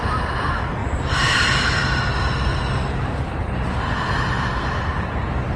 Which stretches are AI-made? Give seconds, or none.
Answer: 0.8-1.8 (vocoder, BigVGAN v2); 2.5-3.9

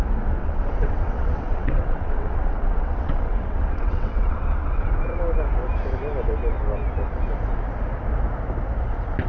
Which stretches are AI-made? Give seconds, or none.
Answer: 0.4-4.9 (vocoder, WaveNeXt)

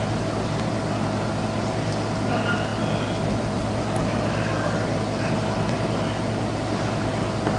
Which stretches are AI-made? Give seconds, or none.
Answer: none